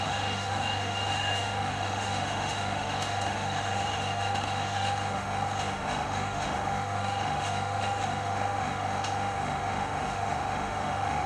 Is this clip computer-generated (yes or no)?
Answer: yes